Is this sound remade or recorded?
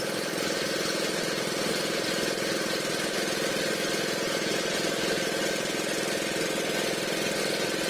recorded